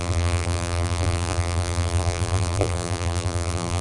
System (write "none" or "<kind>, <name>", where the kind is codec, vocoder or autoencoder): vocoder, BigVGAN v2